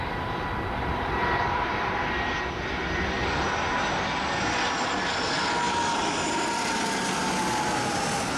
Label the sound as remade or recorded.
recorded